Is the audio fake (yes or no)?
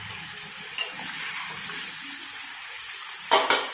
no